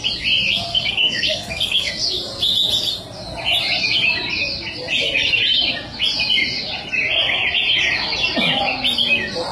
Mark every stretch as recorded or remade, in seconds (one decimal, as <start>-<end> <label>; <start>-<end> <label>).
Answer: 0.0-0.7 recorded; 0.7-1.9 remade; 1.9-9.5 recorded